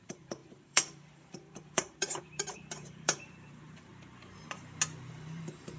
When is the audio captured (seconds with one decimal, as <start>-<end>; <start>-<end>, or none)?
3.9-5.1